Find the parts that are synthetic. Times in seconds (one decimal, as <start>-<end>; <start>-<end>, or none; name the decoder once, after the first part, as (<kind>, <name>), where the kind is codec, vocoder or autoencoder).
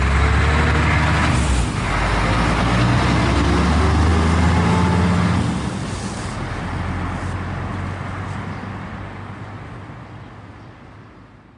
none